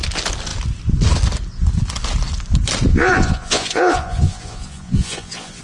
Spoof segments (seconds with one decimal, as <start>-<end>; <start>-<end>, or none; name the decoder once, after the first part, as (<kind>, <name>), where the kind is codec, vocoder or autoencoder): 2.9-5.6 (vocoder, Vocos)